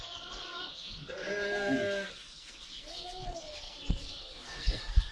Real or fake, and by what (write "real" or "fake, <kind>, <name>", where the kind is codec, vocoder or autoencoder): fake, codec, SNAC